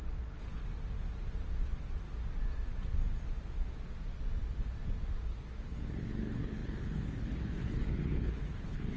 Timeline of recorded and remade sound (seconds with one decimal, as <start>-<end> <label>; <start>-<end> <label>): 0.0-0.6 remade; 0.6-5.7 recorded; 5.7-9.0 remade